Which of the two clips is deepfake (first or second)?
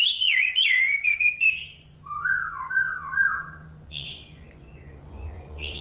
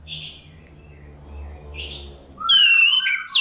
first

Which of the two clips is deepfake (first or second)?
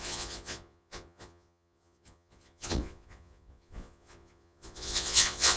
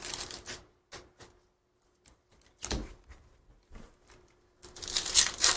first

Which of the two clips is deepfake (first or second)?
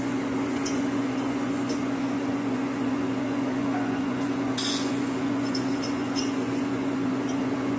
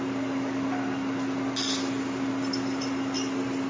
first